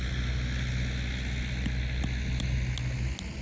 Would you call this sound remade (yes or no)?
no